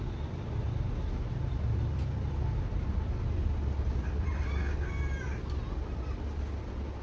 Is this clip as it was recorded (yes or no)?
yes